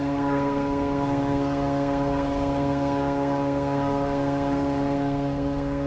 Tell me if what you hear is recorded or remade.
remade